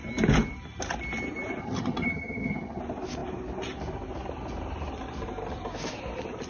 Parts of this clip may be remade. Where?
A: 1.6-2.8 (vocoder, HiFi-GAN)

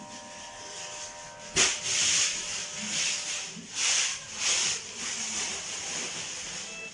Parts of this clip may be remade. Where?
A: none

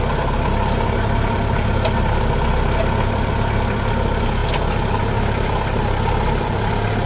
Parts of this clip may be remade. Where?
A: none

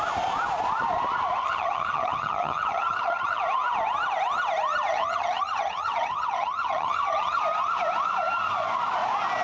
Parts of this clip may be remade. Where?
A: 1.4-3.4 (vocoder, HiFi-GAN); 4.9-7.4

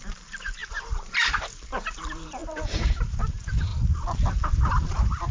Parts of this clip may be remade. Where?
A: 0.0-3.7 (vocoder, BigVGAN v2); 4.3-5.3

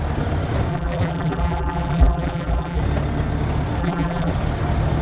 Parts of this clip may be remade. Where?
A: 0.7-2.8 (vocoder, BigVGAN v2); 3.8-4.3

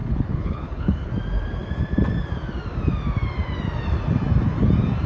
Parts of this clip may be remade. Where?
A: 0.0-1.1 (codec, HILCodec)

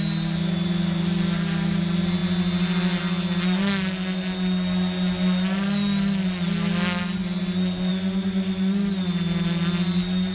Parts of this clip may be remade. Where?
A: none